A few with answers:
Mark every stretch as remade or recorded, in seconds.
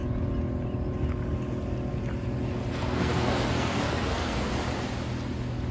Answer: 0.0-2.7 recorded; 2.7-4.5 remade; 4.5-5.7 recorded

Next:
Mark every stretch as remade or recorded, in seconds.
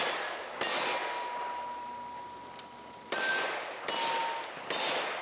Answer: 0.0-5.2 recorded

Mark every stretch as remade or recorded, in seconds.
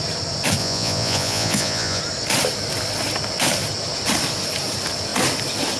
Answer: 0.0-0.6 recorded; 0.6-2.0 remade; 2.0-5.8 recorded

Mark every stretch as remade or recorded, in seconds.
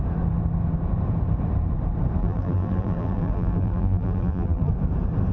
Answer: 0.0-2.2 recorded; 2.2-4.7 remade; 4.7-5.3 recorded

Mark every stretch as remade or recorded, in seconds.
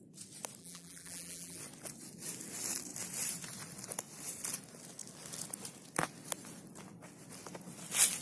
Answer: 0.0-0.6 recorded; 0.6-1.6 remade; 1.6-8.2 recorded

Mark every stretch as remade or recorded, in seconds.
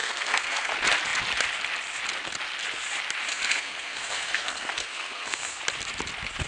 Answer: 0.0-0.7 remade; 0.7-3.3 recorded; 3.3-5.6 remade; 5.6-6.5 recorded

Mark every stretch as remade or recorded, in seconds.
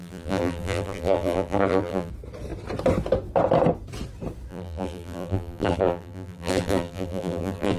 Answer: 0.0-2.1 remade; 2.1-4.5 recorded; 4.5-7.8 remade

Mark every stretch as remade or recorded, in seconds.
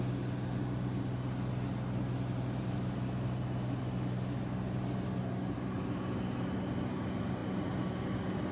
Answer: 0.0-8.5 recorded